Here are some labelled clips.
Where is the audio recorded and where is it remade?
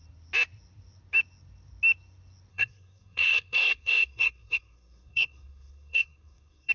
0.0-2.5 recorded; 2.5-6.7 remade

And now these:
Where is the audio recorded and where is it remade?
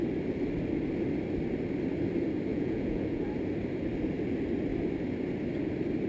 0.0-2.5 recorded; 2.5-3.2 remade; 3.2-6.1 recorded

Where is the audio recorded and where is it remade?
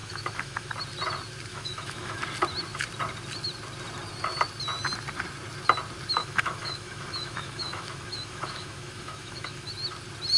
0.0-0.7 remade; 0.7-1.5 recorded; 1.5-2.2 remade; 2.2-6.2 recorded; 6.2-9.7 remade; 9.7-10.4 recorded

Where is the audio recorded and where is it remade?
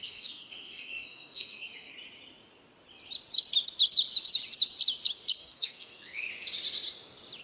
0.0-1.9 remade; 1.9-5.3 recorded; 5.3-6.3 remade; 6.3-7.4 recorded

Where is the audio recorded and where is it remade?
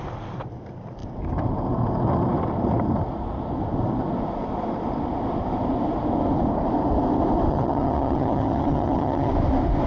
0.0-7.5 recorded; 7.5-9.3 remade; 9.3-9.9 recorded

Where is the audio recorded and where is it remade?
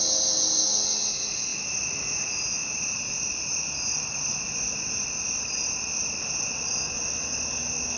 0.0-8.0 recorded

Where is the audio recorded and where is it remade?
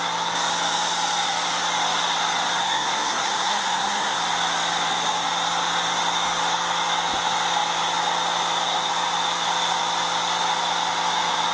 0.0-2.6 recorded; 2.6-4.2 remade; 4.2-11.5 recorded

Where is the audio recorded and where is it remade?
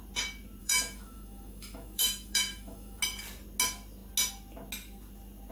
0.0-0.6 recorded; 0.6-3.0 remade; 3.0-5.5 recorded